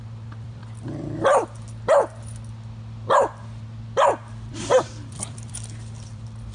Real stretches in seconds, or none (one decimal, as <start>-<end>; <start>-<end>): 0.6-4.5